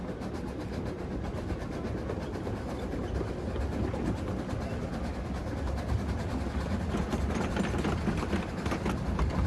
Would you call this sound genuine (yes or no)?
yes